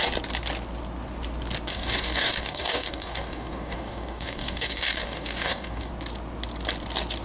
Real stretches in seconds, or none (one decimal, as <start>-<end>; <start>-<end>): 0.0-1.7; 5.9-7.2